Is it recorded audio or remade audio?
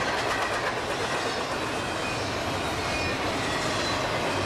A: recorded